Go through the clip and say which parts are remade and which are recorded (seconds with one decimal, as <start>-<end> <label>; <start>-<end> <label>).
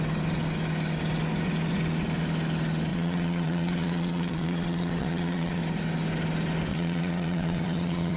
0.0-2.9 recorded; 2.9-5.6 remade; 5.6-6.7 recorded; 6.7-8.2 remade